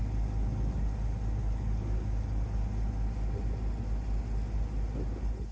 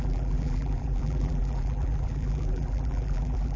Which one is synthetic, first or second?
second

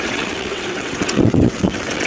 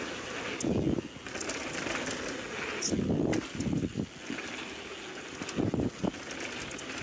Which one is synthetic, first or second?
first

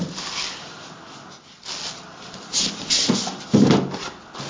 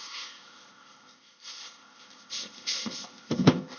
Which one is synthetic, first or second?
second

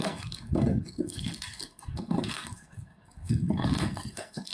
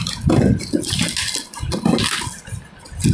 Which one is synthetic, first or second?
first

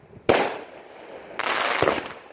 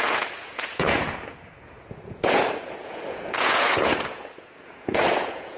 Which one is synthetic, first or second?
second